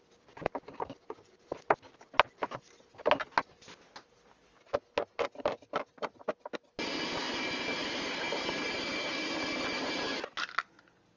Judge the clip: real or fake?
real